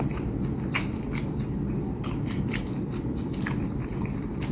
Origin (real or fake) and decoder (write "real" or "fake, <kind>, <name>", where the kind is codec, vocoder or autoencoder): real